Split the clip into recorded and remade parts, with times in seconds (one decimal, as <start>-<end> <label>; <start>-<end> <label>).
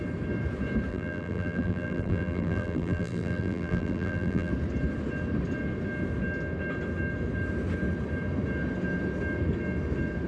0.0-0.9 recorded; 0.9-4.5 remade; 4.5-10.3 recorded